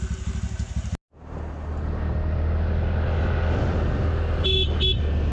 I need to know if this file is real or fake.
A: real